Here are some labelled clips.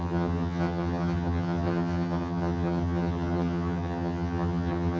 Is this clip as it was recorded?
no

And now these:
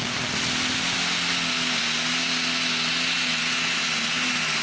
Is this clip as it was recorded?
yes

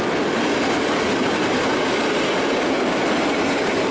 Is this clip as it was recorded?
yes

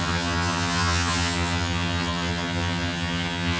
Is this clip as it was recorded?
no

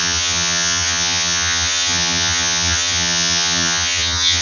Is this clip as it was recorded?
no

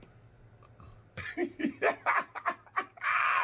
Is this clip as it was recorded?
yes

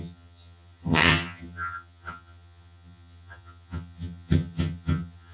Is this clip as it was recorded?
no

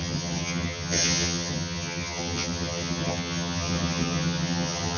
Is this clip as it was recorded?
no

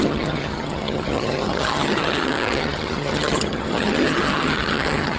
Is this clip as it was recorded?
no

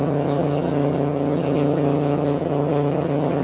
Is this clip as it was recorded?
no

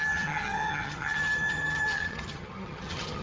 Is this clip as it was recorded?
no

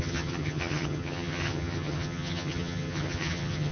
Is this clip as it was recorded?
no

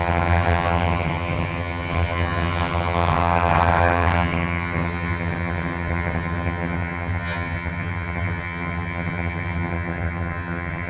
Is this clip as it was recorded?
no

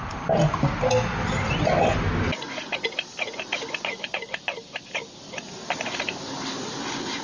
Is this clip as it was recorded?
yes